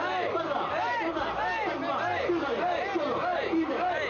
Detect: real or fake real